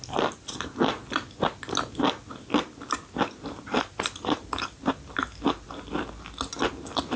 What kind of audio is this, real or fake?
real